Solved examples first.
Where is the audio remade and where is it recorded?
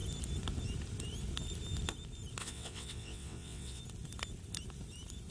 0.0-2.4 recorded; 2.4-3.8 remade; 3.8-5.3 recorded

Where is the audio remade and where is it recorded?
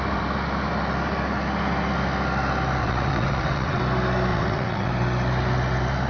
0.0-2.8 recorded; 2.8-3.8 remade; 3.8-4.3 recorded; 4.3-4.9 remade; 4.9-6.1 recorded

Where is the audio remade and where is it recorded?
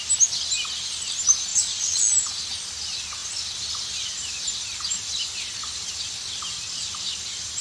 0.0-1.5 recorded; 1.5-2.0 remade; 2.0-7.6 recorded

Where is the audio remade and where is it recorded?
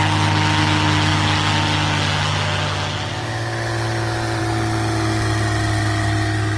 0.0-6.6 recorded